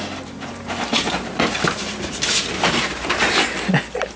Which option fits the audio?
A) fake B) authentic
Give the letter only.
B